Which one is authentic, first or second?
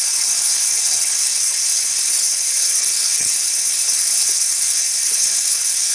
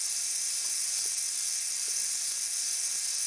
second